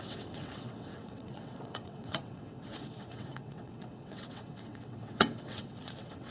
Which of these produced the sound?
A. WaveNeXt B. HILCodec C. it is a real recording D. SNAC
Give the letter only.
A